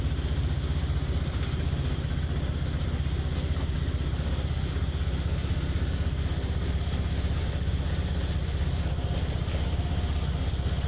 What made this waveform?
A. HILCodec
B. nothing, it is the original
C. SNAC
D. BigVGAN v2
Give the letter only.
B